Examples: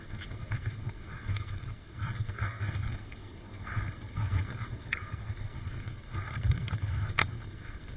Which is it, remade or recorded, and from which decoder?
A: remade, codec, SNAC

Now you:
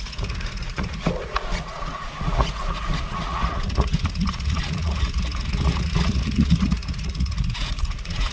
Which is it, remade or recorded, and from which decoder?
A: remade, vocoder, Vocos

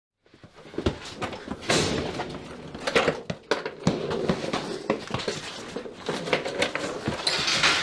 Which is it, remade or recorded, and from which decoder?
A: recorded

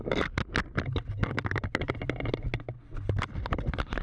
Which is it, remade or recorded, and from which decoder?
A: recorded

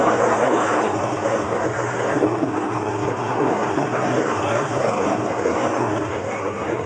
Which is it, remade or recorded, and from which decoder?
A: remade, codec, SNAC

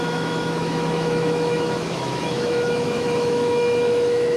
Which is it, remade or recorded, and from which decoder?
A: remade, autoencoder, DAC-VAE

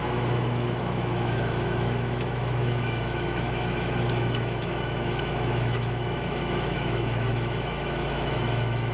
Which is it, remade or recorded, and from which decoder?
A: remade, autoencoder, DAC-VAE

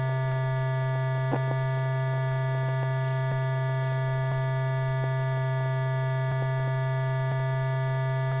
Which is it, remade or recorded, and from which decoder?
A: recorded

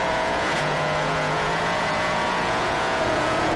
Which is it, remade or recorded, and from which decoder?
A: remade, vocoder, Vocos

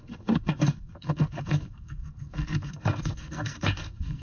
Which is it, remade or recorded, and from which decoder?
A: remade, codec, SNAC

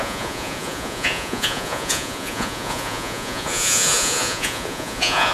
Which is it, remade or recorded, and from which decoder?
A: remade, vocoder, Vocos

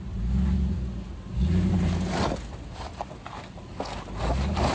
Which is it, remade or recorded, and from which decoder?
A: recorded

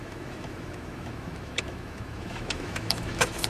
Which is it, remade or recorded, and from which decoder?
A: remade, autoencoder, DAC-VAE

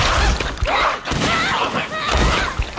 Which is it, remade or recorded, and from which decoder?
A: recorded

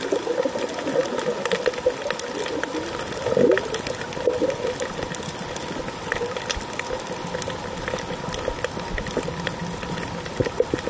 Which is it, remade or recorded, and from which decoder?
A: recorded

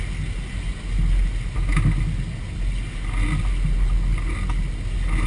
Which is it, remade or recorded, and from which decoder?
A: recorded